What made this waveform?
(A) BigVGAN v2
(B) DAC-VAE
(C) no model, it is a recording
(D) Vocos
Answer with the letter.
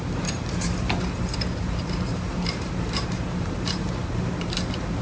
A